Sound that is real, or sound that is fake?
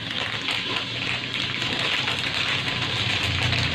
real